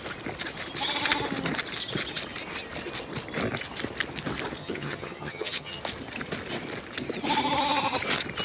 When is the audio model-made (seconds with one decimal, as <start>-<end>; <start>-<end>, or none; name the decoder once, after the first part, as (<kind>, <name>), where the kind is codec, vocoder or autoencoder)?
4.6-5.8 (vocoder, HiFi-GAN)